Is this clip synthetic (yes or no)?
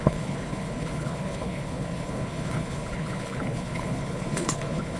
yes